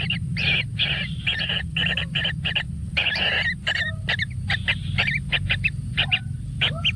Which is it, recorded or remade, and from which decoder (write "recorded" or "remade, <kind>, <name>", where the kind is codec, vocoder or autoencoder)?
recorded